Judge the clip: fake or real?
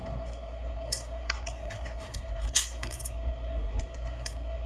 fake